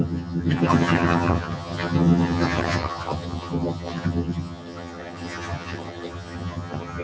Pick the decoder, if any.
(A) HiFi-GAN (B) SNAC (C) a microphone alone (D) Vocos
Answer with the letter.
A